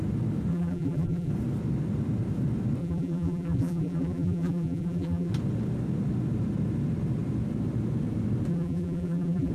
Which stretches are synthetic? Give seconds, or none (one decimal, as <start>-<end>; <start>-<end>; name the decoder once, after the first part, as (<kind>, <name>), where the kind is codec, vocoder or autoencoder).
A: 0.5-1.3 (vocoder, BigVGAN v2); 2.8-5.3; 8.5-9.5